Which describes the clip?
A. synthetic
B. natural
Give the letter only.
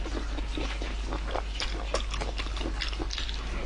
B